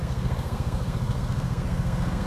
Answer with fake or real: fake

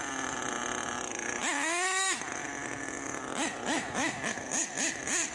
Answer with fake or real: real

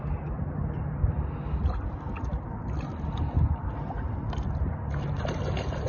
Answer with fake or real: real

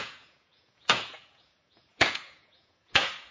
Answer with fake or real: fake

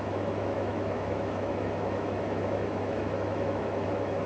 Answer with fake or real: fake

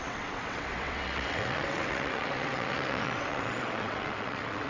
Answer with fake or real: fake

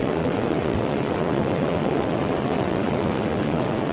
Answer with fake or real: fake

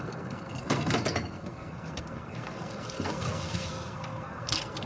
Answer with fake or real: fake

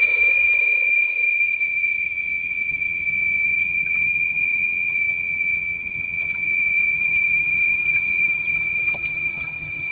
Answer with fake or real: fake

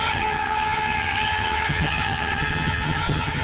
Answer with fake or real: fake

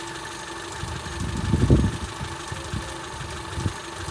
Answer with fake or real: real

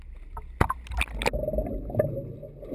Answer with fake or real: real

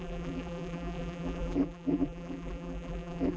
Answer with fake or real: fake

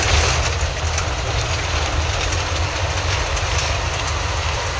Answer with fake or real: real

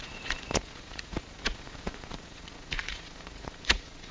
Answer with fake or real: fake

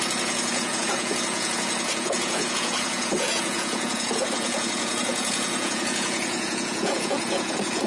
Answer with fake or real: fake